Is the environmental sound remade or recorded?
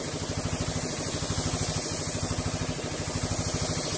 recorded